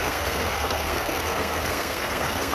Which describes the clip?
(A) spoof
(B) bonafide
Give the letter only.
A